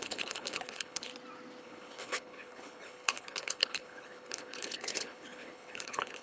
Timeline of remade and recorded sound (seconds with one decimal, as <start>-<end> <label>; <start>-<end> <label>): 0.0-1.1 remade; 1.1-1.6 recorded; 1.6-6.2 remade